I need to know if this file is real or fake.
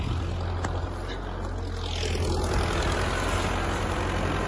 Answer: real